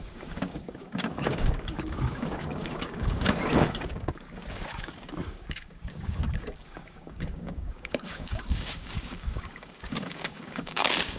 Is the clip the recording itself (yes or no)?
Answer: no